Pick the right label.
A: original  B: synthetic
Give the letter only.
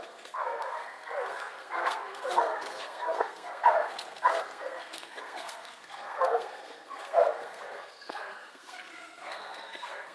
B